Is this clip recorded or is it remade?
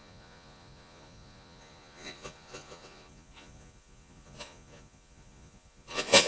remade